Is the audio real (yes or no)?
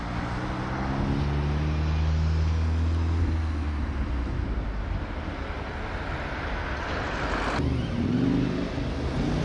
yes